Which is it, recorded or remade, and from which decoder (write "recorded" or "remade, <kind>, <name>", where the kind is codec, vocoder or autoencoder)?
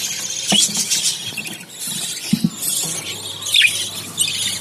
recorded